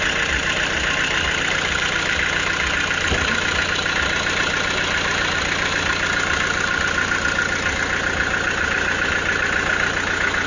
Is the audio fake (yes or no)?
no